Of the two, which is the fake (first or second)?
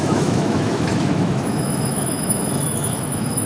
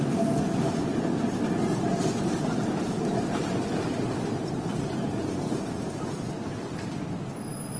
first